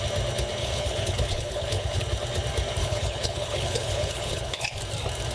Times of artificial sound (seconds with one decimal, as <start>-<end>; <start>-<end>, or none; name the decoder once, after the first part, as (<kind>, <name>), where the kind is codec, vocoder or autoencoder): 0.6-2.0 (codec, HILCodec); 2.8-4.8